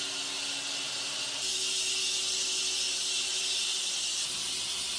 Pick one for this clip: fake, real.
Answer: real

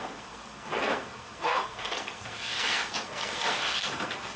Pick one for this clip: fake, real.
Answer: fake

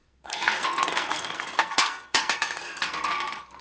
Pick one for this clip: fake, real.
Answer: fake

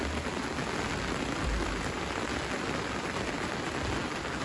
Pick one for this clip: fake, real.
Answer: real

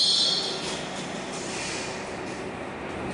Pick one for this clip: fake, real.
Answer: real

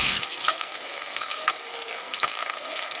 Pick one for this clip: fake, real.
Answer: fake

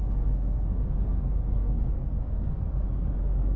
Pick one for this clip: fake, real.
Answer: fake